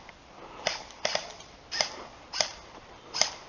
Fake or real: real